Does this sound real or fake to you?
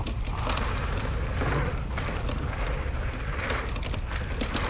real